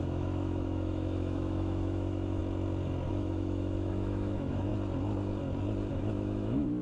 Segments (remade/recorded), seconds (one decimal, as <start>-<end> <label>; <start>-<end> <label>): 0.0-2.4 remade; 2.4-3.1 recorded; 3.1-4.7 remade; 4.7-5.9 recorded; 5.9-6.8 remade